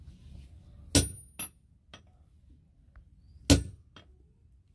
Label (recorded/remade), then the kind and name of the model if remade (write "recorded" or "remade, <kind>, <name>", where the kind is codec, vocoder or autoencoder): recorded